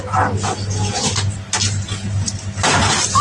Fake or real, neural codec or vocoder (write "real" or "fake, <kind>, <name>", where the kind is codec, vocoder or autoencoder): real